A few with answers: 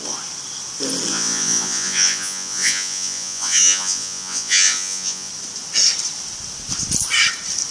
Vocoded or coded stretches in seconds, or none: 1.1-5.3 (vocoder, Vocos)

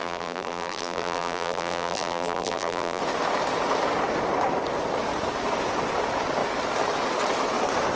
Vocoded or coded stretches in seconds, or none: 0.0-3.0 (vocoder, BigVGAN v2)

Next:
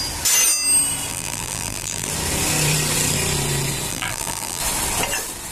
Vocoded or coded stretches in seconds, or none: 1.1-2.1 (vocoder, BigVGAN v2); 3.9-4.6

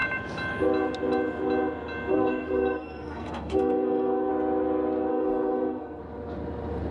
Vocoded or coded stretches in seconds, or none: 2.1-4.3 (codec, SNAC); 5.1-6.0

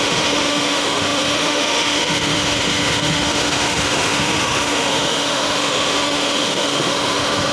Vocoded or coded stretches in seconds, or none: 0.0-7.5 (autoencoder, DAC-VAE)